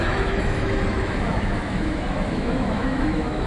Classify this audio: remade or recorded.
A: remade